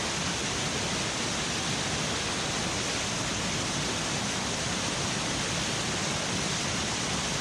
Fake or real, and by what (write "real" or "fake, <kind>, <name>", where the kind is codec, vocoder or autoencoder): real